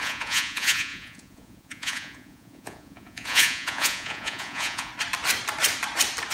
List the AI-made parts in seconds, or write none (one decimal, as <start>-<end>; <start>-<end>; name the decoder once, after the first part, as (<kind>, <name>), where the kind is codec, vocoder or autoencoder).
0.0-4.9 (vocoder, Vocos)